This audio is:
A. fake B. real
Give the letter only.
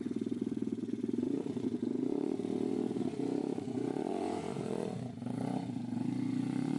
A